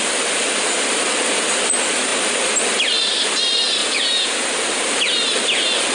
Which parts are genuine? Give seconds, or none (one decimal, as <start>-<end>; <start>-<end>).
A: 0.0-3.8; 4.3-5.9